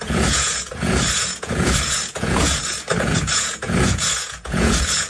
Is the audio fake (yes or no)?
yes